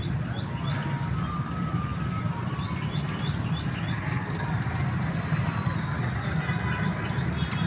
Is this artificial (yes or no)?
no